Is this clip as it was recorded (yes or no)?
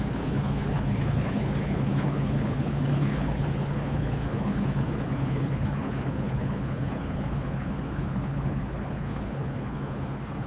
no